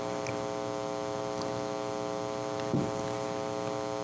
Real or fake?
real